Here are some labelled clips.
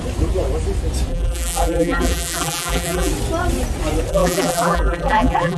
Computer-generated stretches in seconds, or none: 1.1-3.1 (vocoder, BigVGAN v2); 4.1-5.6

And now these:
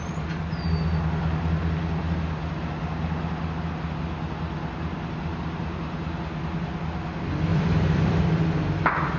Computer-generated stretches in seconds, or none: 7.5-8.2 (vocoder, BigVGAN v2)

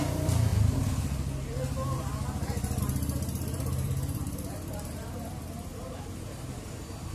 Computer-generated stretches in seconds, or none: 0.0-0.5 (vocoder, BigVGAN v2); 2.8-7.1

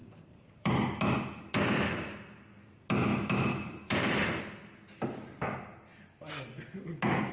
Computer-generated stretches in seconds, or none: 0.0-0.7 (vocoder, BigVGAN v2); 3.1-4.4

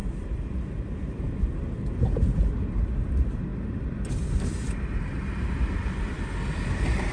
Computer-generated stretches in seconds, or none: 0.0-1.3 (vocoder, BigVGAN v2); 3.5-7.1

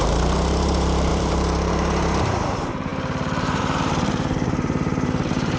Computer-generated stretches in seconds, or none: 0.0-5.6 (vocoder, BigVGAN v2)

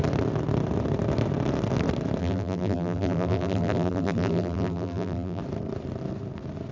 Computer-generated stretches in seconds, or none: 2.2-5.4 (vocoder, BigVGAN v2)